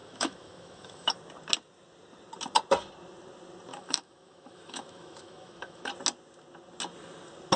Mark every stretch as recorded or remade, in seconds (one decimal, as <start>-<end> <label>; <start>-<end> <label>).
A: 0.0-1.1 remade; 1.1-3.7 recorded; 3.7-5.9 remade; 5.9-7.6 recorded